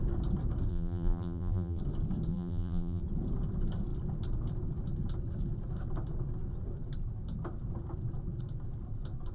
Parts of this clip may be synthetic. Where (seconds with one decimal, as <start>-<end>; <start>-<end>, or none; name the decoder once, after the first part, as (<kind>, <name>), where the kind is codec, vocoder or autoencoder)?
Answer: 0.7-1.8 (vocoder, BigVGAN v2); 2.3-3.0

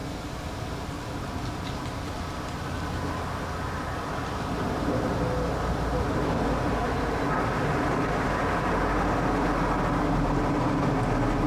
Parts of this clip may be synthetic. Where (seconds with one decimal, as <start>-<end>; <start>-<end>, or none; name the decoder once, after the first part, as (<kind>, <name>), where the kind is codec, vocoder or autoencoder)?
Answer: none

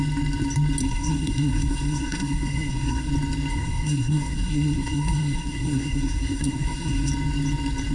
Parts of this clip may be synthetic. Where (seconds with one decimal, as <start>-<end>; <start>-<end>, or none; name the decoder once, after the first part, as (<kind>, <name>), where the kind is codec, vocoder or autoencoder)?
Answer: 0.8-3.1 (codec, SNAC); 3.5-7.1

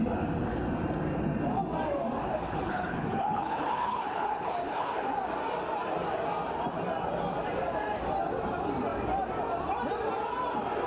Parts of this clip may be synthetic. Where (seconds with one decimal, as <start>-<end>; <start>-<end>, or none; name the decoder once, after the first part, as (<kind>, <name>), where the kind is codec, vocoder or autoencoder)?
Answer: 2.2-5.1 (codec, HILCodec)

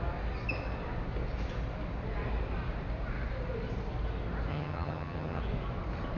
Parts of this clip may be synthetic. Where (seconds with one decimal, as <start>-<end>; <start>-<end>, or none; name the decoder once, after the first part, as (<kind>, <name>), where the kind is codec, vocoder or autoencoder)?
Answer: 4.5-5.4 (vocoder, HiFi-GAN)

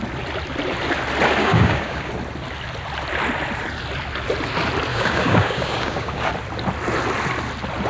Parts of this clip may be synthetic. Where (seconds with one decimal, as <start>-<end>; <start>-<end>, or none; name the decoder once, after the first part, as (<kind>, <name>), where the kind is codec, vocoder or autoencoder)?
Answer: 1.4-2.1 (codec, DAC); 4.9-6.3

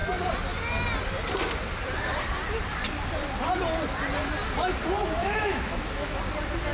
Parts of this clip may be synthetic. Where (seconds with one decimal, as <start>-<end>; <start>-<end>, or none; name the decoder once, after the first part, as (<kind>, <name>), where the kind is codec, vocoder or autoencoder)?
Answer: 5.2-6.2 (autoencoder, DAC-VAE)